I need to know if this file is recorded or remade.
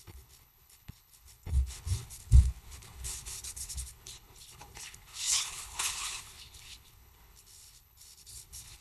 remade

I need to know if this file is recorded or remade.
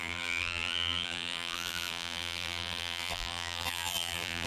remade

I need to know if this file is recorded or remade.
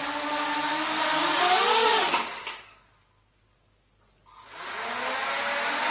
recorded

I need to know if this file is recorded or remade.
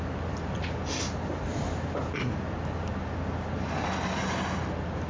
recorded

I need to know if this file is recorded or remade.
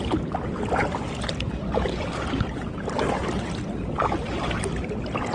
recorded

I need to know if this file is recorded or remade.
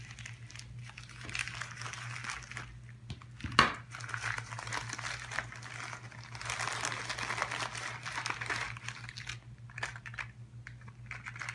recorded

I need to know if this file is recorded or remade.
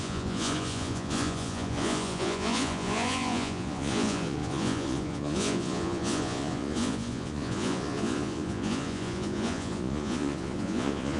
remade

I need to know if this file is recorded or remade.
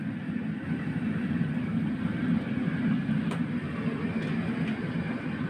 recorded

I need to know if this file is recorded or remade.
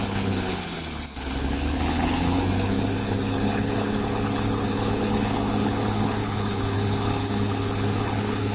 remade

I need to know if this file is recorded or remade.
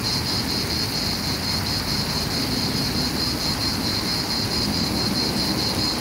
recorded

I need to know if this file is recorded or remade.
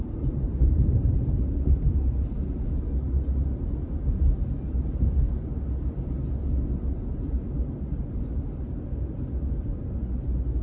recorded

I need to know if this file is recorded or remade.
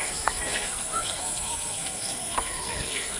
remade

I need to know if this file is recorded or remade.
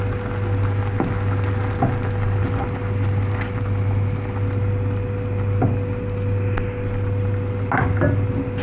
recorded